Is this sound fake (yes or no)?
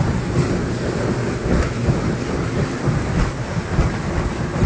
no